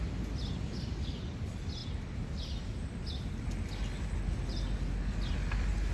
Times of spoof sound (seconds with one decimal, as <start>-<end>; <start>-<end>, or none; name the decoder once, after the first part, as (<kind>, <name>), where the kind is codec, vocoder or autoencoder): none